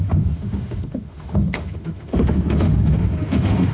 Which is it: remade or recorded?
remade